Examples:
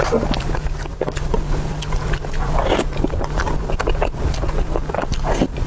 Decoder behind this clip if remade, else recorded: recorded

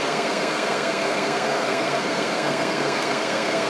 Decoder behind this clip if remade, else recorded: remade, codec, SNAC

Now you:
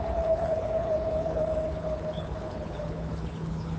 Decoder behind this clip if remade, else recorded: remade, codec, HILCodec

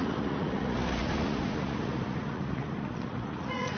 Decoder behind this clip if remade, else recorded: remade, vocoder, Vocos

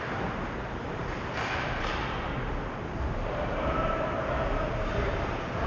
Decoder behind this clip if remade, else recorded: remade, vocoder, BigVGAN v2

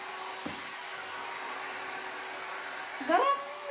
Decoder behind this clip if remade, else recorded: recorded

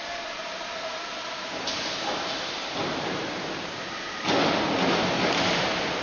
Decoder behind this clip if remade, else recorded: recorded